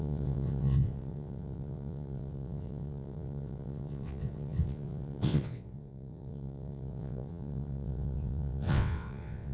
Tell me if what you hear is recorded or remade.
remade